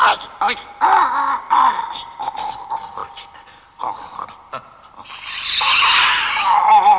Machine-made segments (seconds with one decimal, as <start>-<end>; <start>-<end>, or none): none